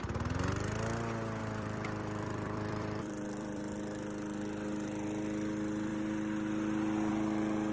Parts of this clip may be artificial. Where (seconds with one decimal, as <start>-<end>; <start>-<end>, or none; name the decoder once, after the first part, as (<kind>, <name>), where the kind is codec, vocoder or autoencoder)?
1.4-3.8 (vocoder, BigVGAN v2)